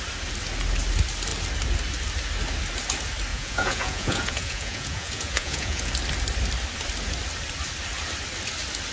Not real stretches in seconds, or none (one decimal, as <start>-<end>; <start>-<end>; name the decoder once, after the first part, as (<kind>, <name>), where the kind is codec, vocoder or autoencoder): 3.3-5.9 (vocoder, Vocos)

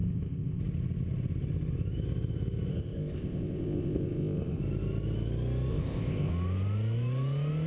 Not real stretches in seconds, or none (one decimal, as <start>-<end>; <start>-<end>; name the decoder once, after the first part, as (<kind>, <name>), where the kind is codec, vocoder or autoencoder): 0.0-0.6 (codec, ZipCodec); 2.7-4.6; 5.7-6.3

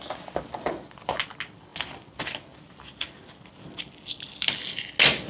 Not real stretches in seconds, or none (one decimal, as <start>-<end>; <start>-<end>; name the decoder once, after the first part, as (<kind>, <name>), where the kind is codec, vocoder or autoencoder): none